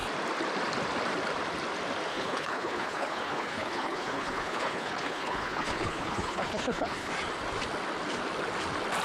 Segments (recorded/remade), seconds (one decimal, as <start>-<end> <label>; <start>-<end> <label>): 0.0-2.1 recorded; 2.1-7.1 remade; 7.1-9.0 recorded